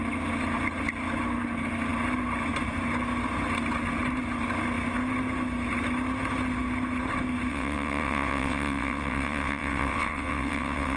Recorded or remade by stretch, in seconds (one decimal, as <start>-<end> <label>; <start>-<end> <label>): 0.0-7.5 recorded; 7.5-11.0 remade